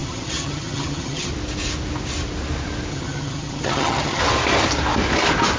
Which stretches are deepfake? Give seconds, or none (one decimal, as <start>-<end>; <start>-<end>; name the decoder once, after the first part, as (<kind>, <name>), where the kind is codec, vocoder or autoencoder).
0.0-1.3 (vocoder, HiFi-GAN); 2.9-4.2